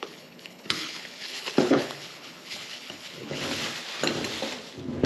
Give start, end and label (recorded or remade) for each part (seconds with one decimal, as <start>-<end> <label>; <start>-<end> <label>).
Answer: 0.0-3.6 remade; 3.6-5.1 recorded